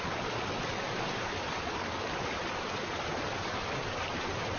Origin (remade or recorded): recorded